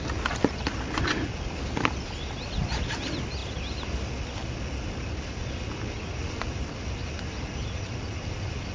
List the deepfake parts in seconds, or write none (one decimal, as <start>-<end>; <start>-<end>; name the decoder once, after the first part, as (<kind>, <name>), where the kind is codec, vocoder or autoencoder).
none